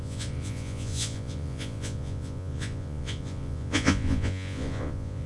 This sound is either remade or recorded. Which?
remade